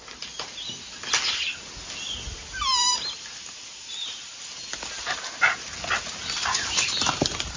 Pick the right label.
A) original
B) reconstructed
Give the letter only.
A